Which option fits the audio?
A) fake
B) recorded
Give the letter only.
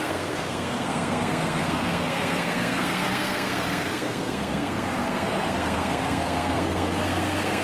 A